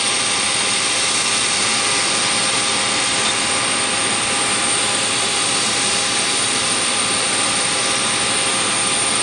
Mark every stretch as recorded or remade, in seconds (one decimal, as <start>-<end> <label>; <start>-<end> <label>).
0.0-5.3 recorded; 5.3-7.8 remade; 7.8-9.2 recorded